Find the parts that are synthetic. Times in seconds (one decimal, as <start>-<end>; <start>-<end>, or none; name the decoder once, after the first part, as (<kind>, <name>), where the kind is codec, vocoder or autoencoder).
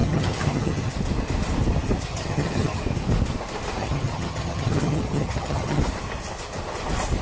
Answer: 0.0-0.9 (vocoder, HiFi-GAN); 2.1-2.8; 3.8-5.8